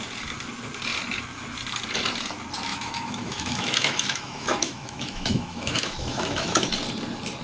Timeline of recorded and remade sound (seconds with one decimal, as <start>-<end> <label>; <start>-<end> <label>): 0.0-2.7 recorded; 2.7-6.7 remade; 6.7-7.4 recorded